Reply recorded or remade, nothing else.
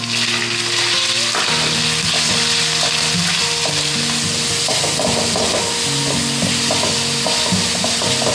recorded